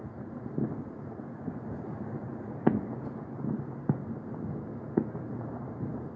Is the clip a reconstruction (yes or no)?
no